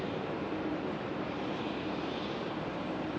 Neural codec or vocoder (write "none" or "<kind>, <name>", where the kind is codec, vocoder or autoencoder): vocoder, BigVGAN v2